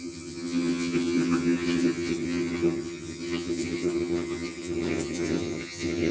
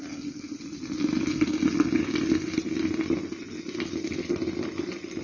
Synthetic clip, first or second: first